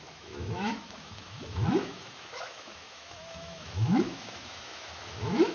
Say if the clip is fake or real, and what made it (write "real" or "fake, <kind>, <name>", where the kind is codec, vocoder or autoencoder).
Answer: fake, autoencoder, DAC-VAE